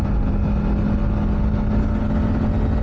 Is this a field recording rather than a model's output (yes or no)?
yes